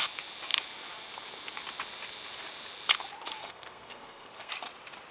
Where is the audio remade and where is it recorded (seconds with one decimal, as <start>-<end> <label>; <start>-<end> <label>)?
0.0-3.4 recorded; 3.4-4.5 remade; 4.5-5.1 recorded